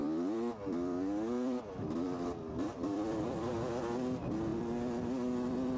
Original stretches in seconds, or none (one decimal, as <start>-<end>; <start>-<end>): 3.5-5.8